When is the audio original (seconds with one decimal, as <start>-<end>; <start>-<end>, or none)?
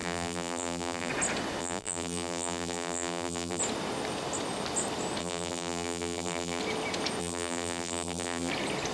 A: 1.1-1.6; 3.6-5.2; 6.6-7.2; 8.5-8.9